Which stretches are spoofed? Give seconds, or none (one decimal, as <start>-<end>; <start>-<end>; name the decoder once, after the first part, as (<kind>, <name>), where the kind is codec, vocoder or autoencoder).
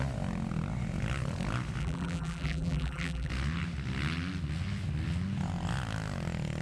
1.8-3.3 (vocoder, BigVGAN v2)